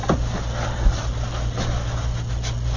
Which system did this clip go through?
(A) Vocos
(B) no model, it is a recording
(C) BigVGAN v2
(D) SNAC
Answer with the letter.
B